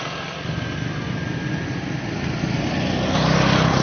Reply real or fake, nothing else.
real